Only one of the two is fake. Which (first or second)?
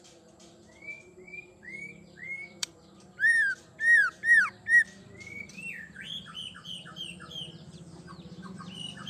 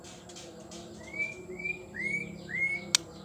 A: first